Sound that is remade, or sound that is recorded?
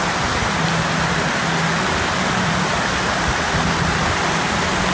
recorded